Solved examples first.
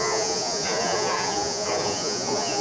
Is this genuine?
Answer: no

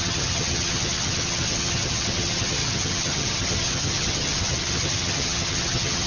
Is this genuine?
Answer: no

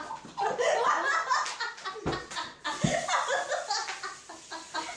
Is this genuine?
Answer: yes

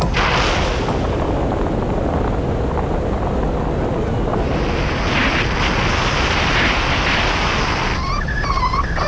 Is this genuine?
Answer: yes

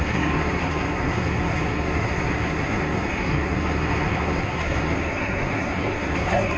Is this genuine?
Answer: no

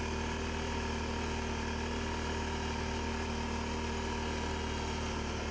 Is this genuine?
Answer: yes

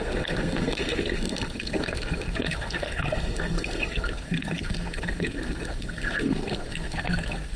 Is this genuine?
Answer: no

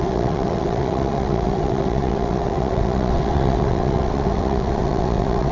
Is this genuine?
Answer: no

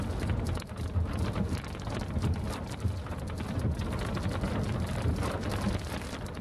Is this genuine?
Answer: yes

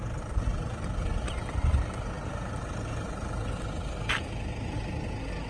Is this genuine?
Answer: yes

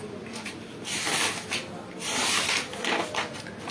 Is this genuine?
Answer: yes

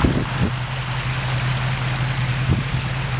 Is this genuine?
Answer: yes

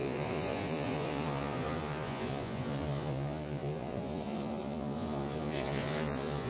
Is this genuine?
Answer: no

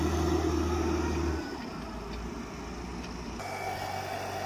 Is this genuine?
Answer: yes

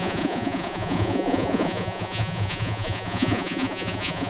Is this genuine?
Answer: no